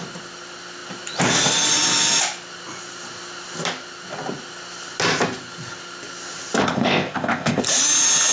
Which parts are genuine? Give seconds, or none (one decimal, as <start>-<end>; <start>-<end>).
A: 0.0-6.6; 7.6-8.3